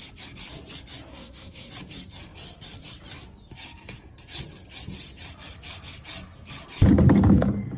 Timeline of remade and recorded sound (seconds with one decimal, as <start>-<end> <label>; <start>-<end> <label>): 0.0-1.1 recorded; 1.1-1.7 remade; 1.7-7.8 recorded